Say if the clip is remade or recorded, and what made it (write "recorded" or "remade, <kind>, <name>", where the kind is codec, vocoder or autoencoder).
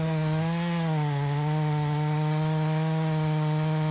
recorded